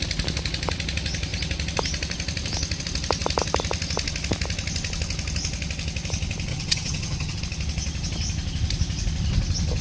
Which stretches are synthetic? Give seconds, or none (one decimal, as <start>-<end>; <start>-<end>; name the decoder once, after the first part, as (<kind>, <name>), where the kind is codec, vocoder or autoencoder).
6.5-7.4 (vocoder, HiFi-GAN)